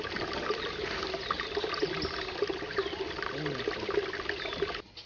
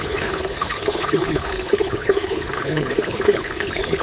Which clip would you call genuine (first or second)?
first